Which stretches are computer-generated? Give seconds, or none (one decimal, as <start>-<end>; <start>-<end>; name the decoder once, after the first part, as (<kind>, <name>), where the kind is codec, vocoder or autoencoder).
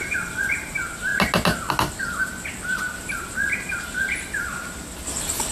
none